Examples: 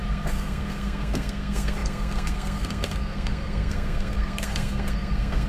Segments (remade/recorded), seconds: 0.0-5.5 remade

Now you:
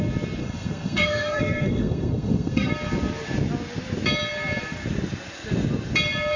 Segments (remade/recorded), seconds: 0.0-0.4 recorded; 0.4-2.7 remade; 2.7-6.4 recorded

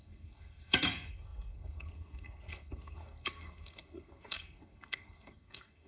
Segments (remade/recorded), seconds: 0.0-5.9 remade